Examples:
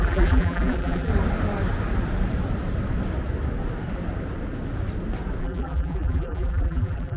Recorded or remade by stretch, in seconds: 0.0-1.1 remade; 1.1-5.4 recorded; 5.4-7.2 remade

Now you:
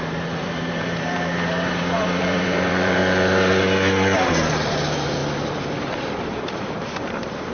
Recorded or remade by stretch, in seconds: 0.0-3.0 remade; 3.0-4.5 recorded; 4.5-5.2 remade; 5.2-5.9 recorded; 5.9-7.5 remade

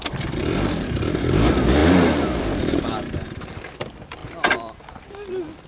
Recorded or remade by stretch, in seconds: 0.0-1.8 remade; 1.8-2.4 recorded; 2.4-5.7 remade